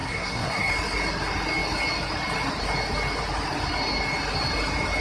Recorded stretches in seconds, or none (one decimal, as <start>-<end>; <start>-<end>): 0.7-5.0